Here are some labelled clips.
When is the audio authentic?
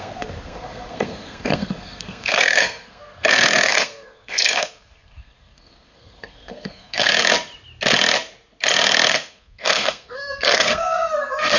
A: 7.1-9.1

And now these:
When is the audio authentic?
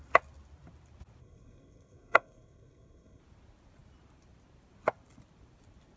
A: 0.0-1.2; 3.2-6.0